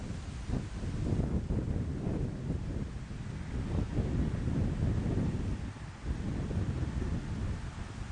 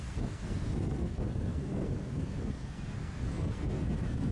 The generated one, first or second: second